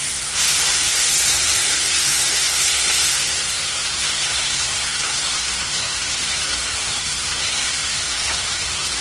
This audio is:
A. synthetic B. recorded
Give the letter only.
A